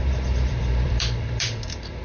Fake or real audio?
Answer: fake